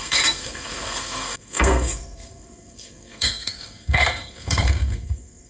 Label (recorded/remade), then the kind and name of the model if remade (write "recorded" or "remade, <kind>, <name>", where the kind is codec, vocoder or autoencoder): remade, codec, SNAC